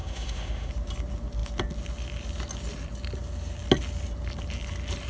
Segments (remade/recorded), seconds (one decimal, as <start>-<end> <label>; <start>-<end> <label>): 0.0-0.7 remade; 0.7-5.1 recorded